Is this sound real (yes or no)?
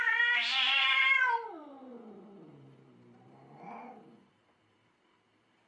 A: no